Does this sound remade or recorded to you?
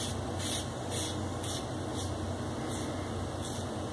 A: recorded